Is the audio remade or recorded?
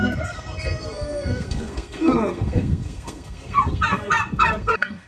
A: remade